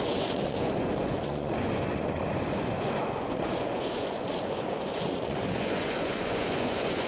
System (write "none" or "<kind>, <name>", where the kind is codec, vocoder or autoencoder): vocoder, Vocos